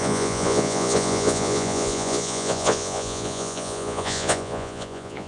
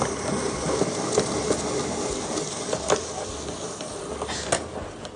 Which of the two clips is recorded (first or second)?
second